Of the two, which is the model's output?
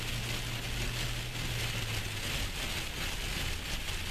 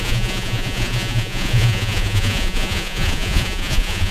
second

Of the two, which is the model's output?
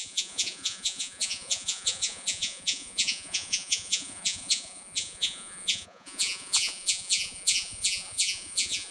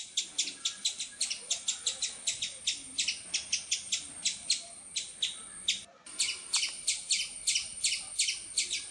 first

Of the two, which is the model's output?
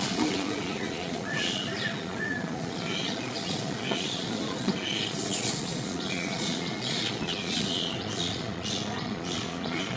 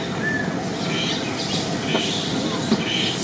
first